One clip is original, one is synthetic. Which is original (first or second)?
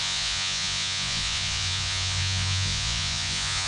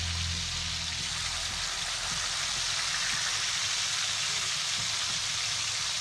second